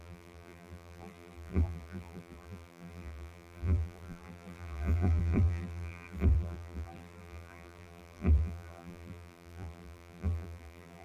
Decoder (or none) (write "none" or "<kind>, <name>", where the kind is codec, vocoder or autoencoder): vocoder, BigVGAN v2